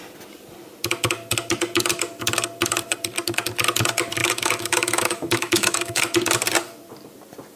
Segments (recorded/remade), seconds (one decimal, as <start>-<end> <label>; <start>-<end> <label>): 0.0-4.2 recorded; 4.2-6.0 remade; 6.0-7.6 recorded